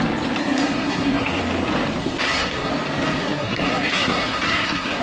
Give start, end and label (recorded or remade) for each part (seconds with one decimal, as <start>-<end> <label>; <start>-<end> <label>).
0.0-0.4 recorded; 0.4-1.4 remade; 1.4-2.0 recorded; 2.0-2.7 remade; 2.7-3.2 recorded; 3.2-5.0 remade